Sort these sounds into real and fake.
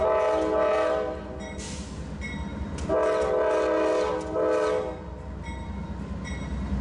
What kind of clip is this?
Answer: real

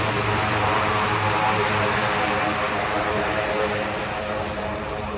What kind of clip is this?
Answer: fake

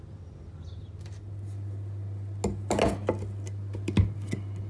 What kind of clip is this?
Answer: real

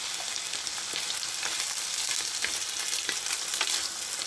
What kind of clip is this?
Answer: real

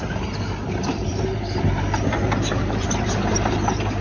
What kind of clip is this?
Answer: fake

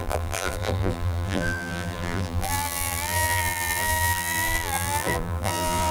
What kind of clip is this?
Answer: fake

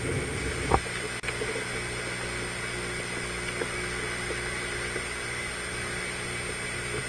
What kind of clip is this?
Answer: real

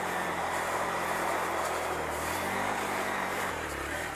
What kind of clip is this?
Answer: fake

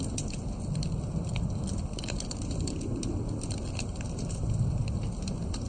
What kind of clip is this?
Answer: real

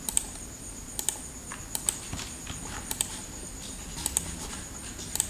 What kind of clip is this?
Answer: real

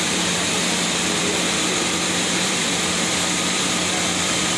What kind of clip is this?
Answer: fake